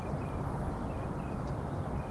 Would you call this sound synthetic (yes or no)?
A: no